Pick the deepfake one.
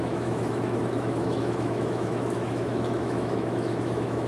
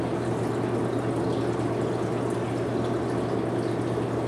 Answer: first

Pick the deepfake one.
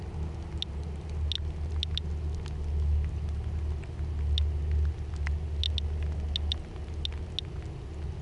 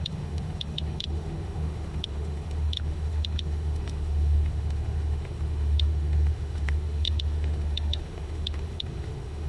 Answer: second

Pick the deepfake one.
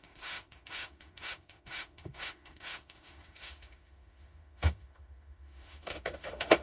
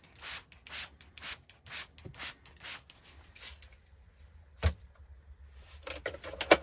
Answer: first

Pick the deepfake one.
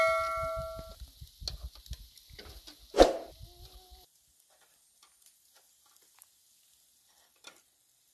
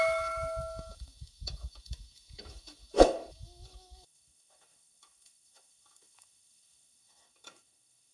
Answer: second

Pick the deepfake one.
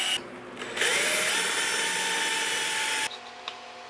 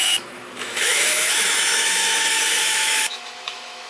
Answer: second